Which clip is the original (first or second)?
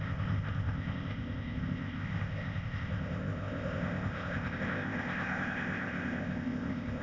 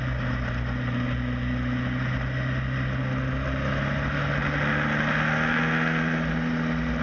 second